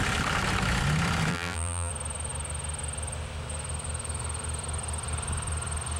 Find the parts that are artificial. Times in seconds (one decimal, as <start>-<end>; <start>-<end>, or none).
1.3-1.9